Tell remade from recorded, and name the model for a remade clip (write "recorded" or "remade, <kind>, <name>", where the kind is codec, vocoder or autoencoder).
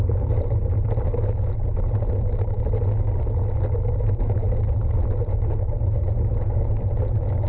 recorded